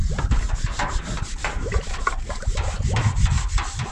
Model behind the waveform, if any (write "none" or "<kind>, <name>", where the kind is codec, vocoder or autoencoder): none